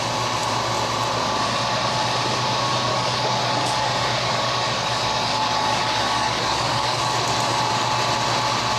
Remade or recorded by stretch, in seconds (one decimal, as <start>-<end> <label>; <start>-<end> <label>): 0.0-2.9 recorded; 2.9-7.0 remade; 7.0-8.8 recorded